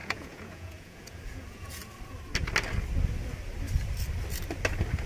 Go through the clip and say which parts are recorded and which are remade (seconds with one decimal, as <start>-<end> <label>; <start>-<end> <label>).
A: 0.0-1.8 remade; 1.8-5.1 recorded